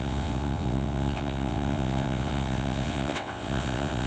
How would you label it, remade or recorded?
remade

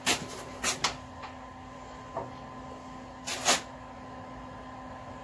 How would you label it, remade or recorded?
recorded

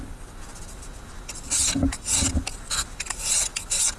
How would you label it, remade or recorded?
recorded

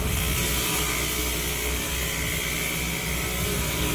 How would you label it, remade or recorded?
recorded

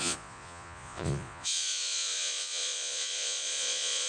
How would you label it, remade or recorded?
remade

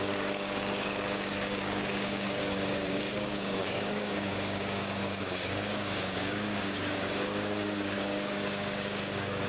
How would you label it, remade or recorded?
remade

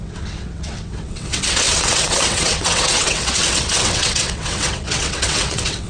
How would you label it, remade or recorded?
remade